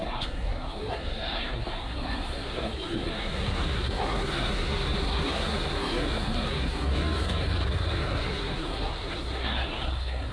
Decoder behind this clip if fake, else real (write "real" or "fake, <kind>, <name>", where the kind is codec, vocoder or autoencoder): fake, codec, SNAC